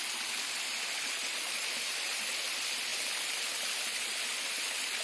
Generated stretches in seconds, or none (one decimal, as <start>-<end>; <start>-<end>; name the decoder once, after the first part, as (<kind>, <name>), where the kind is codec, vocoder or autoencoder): 1.2-2.2 (vocoder, BigVGAN v2)